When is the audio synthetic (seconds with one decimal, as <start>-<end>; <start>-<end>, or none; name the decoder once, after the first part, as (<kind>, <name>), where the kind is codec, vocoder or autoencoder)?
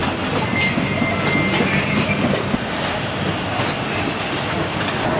none